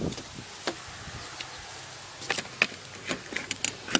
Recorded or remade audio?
recorded